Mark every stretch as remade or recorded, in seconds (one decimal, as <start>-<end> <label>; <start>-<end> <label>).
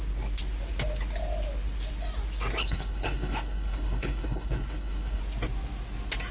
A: 0.0-2.6 recorded; 2.6-5.2 remade; 5.2-6.3 recorded